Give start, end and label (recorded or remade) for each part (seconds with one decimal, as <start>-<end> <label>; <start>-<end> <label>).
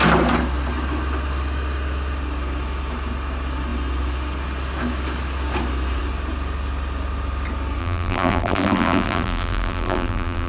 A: 0.0-7.8 recorded; 7.8-10.5 remade